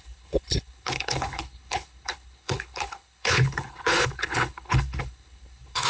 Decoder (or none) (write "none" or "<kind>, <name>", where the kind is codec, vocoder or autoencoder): codec, HILCodec